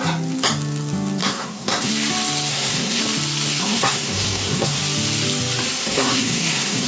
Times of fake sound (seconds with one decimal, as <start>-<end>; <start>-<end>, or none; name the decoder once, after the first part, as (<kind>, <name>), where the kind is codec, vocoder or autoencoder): 1.2-1.9 (codec, SNAC); 2.5-3.0; 3.6-4.8; 5.8-6.9